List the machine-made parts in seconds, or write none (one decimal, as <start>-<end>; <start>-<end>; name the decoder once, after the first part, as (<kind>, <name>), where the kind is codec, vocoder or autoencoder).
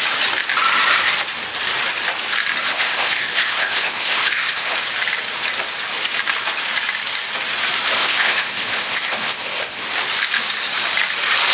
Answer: 2.7-4.7 (codec, ZipCodec); 8.0-9.8